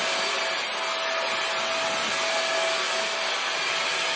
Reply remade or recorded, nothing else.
recorded